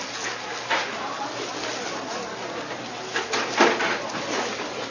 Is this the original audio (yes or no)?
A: yes